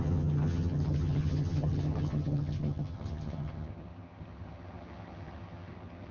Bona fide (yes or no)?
no